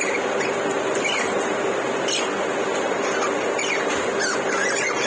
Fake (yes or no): no